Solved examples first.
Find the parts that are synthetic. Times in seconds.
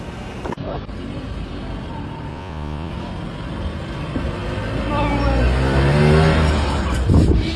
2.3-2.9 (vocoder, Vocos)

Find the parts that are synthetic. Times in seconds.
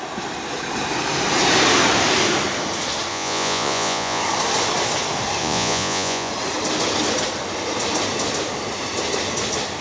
3.1-4.2 (vocoder, Vocos); 5.4-6.3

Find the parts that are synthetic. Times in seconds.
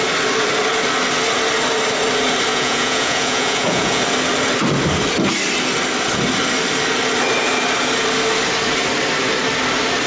2.5-4.0 (vocoder, Vocos)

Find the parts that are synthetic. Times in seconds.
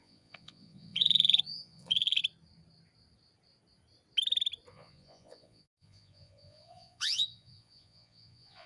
0.0-2.2 (vocoder, Vocos); 4.7-8.7